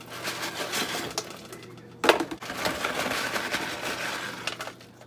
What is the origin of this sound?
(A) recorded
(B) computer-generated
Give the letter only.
A